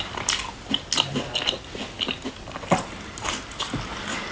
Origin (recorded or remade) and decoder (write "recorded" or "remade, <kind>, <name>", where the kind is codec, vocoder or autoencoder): recorded